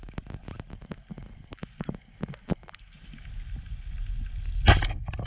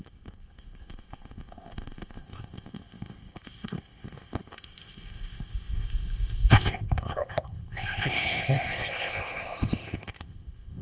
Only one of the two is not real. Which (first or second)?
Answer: second